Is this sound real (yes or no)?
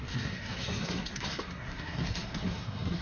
no